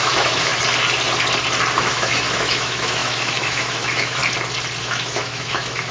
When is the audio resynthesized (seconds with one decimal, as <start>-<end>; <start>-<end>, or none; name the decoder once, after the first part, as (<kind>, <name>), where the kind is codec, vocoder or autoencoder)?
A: 0.0-0.5 (autoencoder, DAC-VAE); 1.8-4.2; 4.8-5.9